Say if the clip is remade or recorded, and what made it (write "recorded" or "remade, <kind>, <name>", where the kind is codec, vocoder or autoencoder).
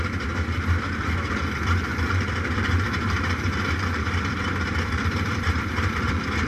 remade, vocoder, BigVGAN v2